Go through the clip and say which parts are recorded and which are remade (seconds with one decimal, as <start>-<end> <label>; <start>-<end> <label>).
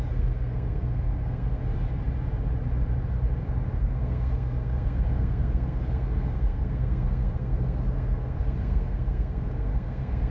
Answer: 0.0-1.6 remade; 1.6-3.8 recorded; 3.8-10.3 remade